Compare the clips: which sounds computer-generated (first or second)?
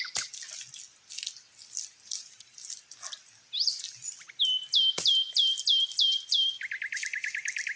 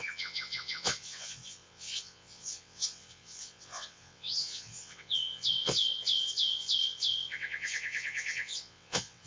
second